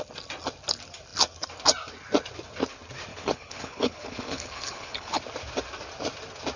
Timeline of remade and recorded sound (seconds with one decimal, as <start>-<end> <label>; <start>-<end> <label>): 0.0-3.1 recorded; 3.1-5.2 remade; 5.2-6.6 recorded